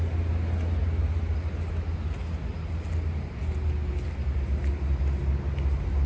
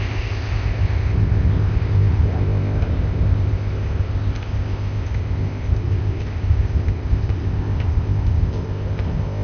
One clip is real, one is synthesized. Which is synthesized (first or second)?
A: second